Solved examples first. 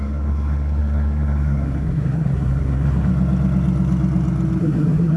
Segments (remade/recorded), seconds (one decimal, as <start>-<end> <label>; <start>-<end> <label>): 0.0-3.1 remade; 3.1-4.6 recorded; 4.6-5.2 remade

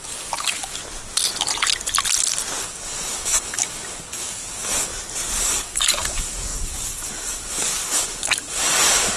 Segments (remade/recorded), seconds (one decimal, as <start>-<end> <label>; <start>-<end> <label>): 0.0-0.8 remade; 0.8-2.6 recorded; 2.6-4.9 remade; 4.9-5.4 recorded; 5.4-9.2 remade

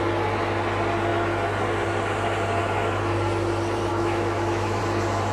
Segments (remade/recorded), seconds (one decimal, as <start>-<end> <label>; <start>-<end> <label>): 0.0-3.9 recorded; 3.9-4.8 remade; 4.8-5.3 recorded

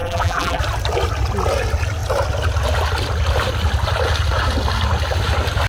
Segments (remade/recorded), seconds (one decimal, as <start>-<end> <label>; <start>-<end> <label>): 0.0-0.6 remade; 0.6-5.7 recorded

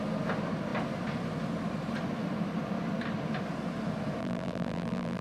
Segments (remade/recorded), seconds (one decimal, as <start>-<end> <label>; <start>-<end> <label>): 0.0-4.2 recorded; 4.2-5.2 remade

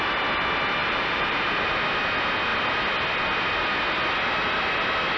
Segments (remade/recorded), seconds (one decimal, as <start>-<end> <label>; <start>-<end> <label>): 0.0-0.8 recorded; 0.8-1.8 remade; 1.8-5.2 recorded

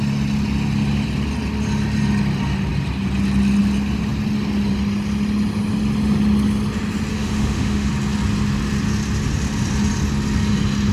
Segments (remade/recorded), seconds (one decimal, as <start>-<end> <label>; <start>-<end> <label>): 0.0-7.1 recorded; 7.1-7.9 remade; 7.9-10.9 recorded

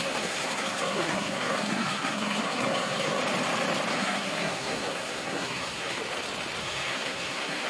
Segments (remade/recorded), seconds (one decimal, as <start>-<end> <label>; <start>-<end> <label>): 0.0-3.2 remade; 3.2-3.9 recorded; 3.9-6.0 remade; 6.0-6.6 recorded; 6.6-7.7 remade